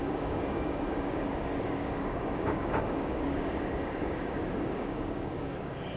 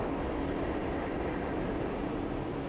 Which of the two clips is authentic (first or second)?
second